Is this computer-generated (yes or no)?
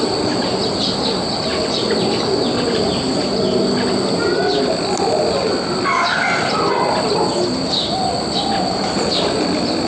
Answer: no